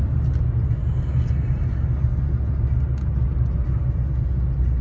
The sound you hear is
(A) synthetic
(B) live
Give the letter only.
B